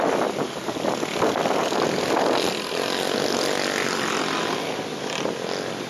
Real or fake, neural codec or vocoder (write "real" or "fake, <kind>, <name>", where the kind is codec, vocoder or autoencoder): real